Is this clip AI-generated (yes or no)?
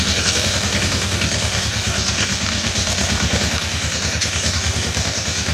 yes